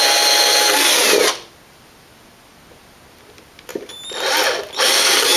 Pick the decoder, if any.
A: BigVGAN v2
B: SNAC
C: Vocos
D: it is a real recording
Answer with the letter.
D